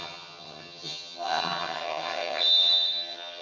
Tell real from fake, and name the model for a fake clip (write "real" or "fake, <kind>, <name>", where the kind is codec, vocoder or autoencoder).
fake, vocoder, HiFi-GAN